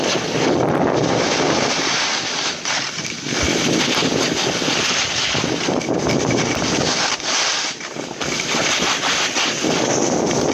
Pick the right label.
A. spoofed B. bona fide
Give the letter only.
B